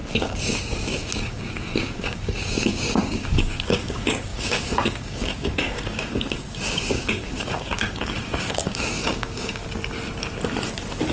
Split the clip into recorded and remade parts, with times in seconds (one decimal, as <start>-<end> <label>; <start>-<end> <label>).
0.0-9.6 remade; 9.6-11.1 recorded